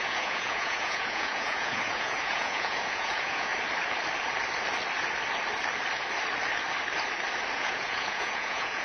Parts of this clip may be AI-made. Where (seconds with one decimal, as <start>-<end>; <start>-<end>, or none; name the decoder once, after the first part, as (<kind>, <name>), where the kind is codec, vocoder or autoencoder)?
0.0-3.5 (vocoder, Vocos); 7.5-8.8